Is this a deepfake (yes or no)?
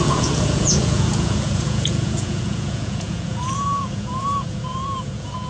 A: yes